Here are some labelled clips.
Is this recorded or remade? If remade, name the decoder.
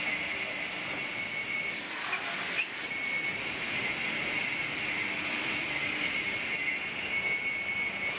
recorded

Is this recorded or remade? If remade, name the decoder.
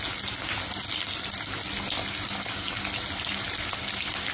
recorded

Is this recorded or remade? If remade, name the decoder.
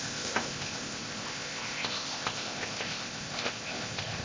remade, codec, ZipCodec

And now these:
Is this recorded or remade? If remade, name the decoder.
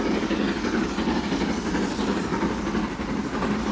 recorded